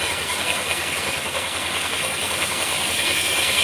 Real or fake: fake